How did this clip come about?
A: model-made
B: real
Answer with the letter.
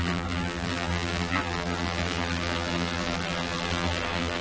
A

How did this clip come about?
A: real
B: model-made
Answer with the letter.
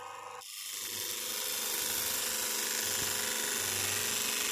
A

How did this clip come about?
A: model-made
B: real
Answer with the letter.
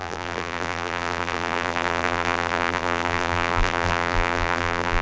A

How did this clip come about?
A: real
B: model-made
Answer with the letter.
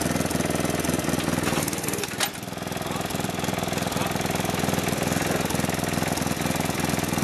A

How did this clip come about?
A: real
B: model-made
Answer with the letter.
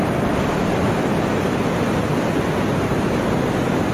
A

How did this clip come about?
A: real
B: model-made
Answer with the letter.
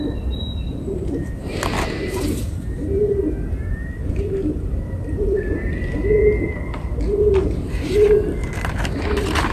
B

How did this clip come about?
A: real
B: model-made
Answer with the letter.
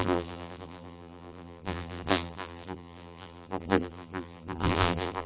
B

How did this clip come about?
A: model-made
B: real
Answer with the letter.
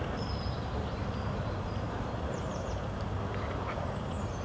A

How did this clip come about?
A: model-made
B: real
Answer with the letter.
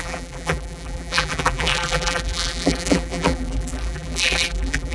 A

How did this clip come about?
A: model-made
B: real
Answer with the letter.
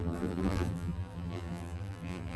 A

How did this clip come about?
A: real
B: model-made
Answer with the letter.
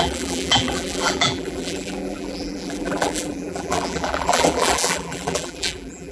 B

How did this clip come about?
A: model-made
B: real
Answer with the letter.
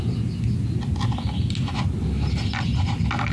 B